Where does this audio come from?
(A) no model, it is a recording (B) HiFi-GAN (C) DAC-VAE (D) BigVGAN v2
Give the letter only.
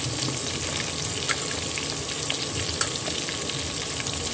A